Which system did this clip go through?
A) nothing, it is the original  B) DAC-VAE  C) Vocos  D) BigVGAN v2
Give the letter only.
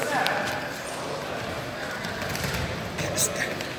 A